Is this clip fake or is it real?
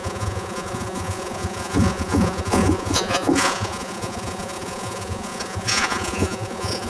fake